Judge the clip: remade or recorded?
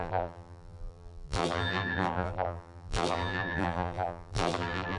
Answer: remade